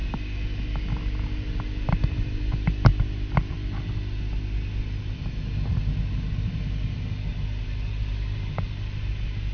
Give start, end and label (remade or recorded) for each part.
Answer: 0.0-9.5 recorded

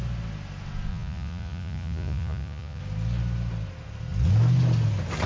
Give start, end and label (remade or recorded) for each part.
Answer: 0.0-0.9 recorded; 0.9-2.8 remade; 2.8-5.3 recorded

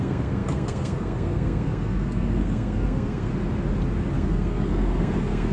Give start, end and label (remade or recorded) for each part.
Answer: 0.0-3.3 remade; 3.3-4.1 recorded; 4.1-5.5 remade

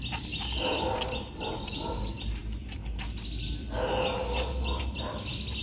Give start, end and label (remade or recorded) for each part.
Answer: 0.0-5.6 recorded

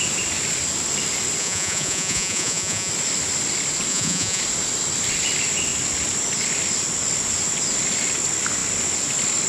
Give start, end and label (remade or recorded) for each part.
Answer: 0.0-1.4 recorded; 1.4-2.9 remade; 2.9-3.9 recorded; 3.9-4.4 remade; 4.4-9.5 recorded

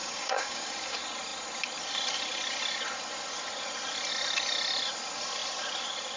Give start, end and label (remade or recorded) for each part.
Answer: 0.0-0.7 remade; 0.7-6.2 recorded

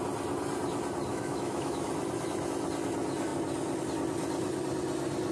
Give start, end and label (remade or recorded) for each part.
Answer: 0.0-1.1 recorded; 1.1-1.9 remade; 1.9-5.3 recorded